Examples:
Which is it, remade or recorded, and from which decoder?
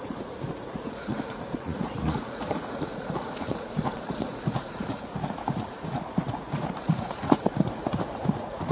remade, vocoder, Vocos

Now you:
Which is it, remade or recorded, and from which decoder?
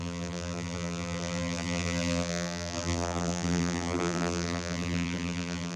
remade, vocoder, BigVGAN v2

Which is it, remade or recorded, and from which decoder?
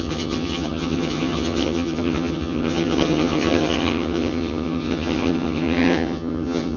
remade, vocoder, HiFi-GAN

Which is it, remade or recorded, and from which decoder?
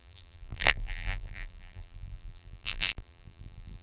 remade, vocoder, BigVGAN v2